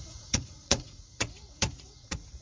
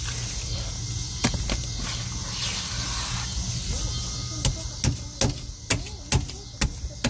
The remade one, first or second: first